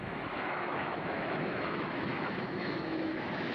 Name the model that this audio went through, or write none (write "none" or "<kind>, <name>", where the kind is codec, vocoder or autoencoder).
autoencoder, DAC-VAE